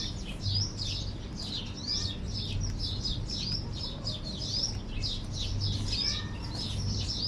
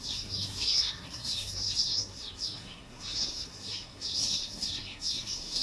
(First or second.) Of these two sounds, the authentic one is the first